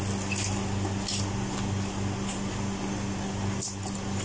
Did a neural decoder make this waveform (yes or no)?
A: no